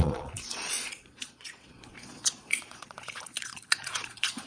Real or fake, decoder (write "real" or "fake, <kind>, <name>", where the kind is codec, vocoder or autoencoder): fake, vocoder, Vocos